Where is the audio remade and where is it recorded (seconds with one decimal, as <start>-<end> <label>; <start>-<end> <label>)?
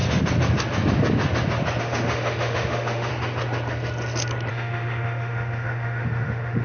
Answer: 0.0-1.8 recorded; 1.8-3.1 remade; 3.1-4.5 recorded; 4.5-6.6 remade